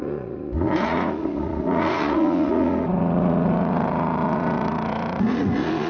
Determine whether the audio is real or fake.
fake